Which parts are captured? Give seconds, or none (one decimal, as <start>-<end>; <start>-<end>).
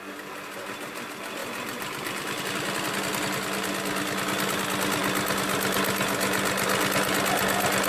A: 0.0-1.4; 2.4-7.9